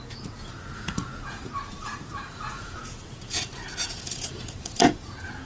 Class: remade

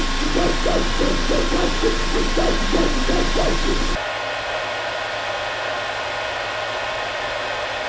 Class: recorded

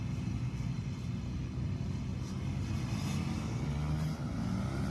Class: recorded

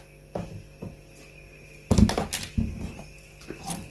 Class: recorded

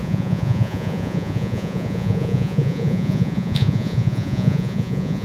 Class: remade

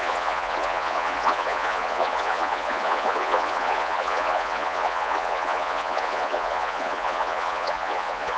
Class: remade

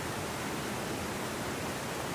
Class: recorded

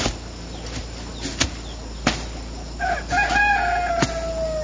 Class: recorded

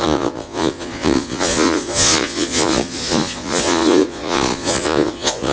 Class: remade